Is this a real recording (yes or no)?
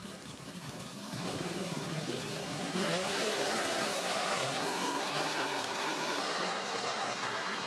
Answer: no